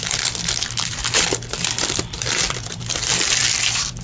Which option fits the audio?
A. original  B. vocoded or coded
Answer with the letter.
B